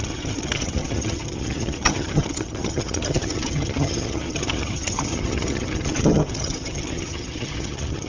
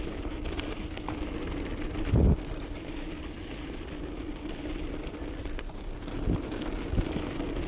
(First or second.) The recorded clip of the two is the second